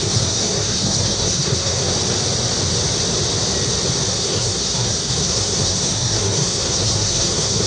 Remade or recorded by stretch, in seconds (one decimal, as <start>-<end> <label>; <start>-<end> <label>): 0.0-1.9 remade; 1.9-4.1 recorded; 4.1-7.7 remade